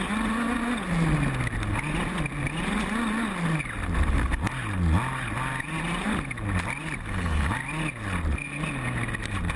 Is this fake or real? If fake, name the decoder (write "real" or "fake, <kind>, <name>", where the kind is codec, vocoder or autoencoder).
real